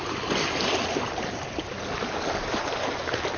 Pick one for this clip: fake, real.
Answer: real